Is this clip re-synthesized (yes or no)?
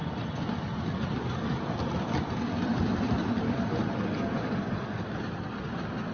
no